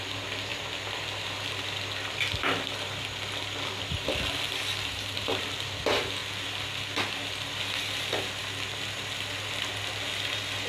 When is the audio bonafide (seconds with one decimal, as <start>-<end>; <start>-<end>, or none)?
0.0-10.7